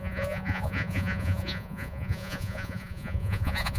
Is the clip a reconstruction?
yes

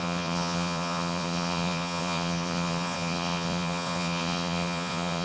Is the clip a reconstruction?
yes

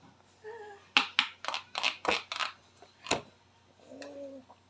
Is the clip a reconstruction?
no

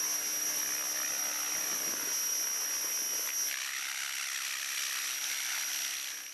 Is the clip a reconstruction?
no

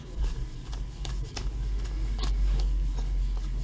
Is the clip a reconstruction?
yes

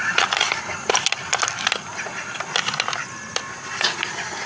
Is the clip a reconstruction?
no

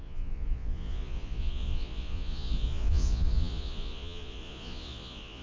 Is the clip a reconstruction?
yes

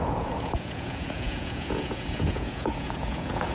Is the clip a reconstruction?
yes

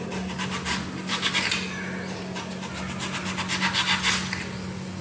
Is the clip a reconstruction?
no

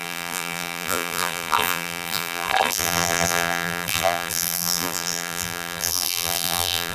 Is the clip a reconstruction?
yes